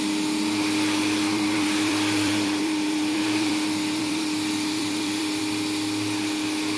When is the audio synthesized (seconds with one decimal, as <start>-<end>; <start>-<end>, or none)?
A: 1.3-5.4